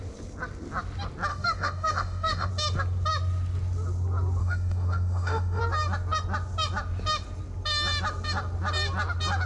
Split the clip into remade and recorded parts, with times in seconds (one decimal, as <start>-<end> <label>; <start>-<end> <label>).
0.0-1.3 recorded; 1.3-2.5 remade; 2.5-4.4 recorded; 4.4-5.6 remade; 5.6-9.5 recorded